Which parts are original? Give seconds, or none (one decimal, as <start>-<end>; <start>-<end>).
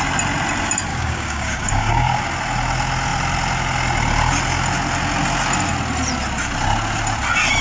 0.0-0.9; 2.2-7.6